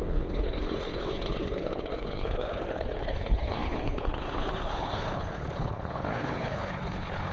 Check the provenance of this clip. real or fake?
fake